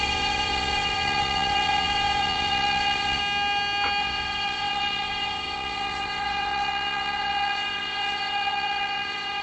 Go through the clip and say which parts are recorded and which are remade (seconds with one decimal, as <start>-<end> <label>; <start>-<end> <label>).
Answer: 0.0-3.2 remade; 3.2-4.0 recorded; 4.0-9.4 remade